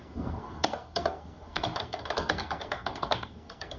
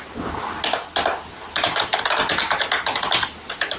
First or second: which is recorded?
second